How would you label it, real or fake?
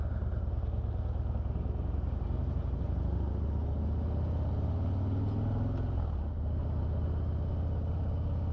real